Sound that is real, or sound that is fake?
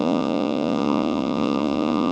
fake